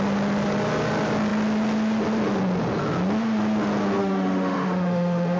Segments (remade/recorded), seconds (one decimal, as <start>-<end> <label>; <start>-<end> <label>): 0.0-4.0 recorded; 4.0-5.4 remade